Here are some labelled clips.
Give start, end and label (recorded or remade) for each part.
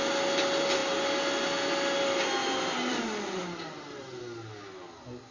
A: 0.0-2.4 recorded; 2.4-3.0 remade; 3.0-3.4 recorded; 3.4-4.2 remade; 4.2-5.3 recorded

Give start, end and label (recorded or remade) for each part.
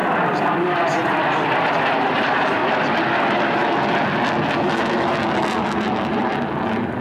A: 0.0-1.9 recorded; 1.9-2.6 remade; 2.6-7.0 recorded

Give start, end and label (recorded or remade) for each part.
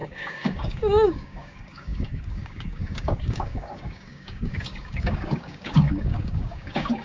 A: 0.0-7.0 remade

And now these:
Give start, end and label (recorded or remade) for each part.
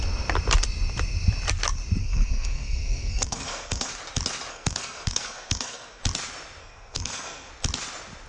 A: 0.0-2.0 recorded; 2.0-3.9 remade; 3.9-4.5 recorded; 4.5-6.0 remade; 6.0-6.6 recorded; 6.6-7.5 remade; 7.5-8.3 recorded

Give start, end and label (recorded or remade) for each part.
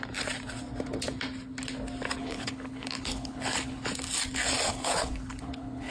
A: 0.0-2.2 recorded; 2.2-3.9 remade; 3.9-4.7 recorded; 4.7-5.9 remade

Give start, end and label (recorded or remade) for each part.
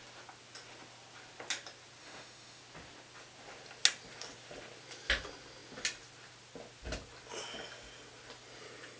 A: 0.0-2.0 recorded; 2.0-2.6 remade; 2.6-9.0 recorded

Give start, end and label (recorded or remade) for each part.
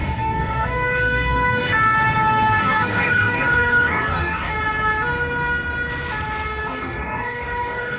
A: 0.0-1.7 remade; 1.7-2.6 recorded; 2.6-4.5 remade; 4.5-6.6 recorded; 6.6-8.0 remade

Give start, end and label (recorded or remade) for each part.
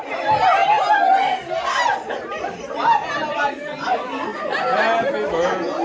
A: 0.0-5.8 recorded